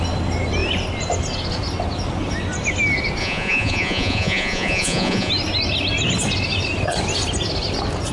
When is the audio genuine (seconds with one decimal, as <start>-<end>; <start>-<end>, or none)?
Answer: 0.0-3.2; 5.3-8.1